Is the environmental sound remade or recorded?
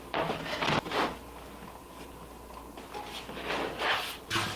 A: recorded